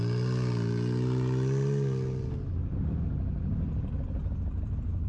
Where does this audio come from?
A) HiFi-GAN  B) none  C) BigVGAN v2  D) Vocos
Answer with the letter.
B